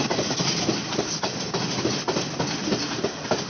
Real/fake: real